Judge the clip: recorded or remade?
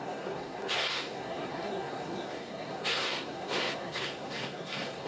remade